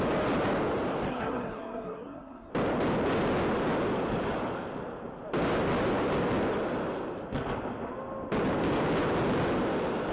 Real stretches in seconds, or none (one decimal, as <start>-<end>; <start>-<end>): 0.0-1.1; 2.5-10.1